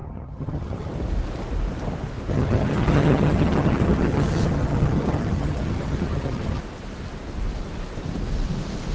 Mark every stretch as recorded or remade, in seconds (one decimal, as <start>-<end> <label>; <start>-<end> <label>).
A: 0.0-0.9 remade; 0.9-2.3 recorded; 2.3-6.6 remade; 6.6-8.9 recorded

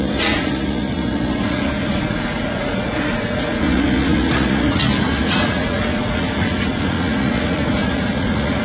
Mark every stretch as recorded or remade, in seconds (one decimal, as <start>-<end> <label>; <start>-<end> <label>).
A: 0.0-8.6 remade

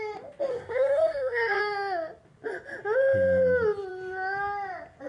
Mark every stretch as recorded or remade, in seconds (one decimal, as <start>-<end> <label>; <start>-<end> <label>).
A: 0.0-0.5 recorded; 0.5-1.6 remade; 1.6-5.1 recorded